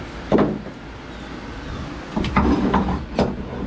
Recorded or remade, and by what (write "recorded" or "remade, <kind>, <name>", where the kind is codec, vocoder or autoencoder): recorded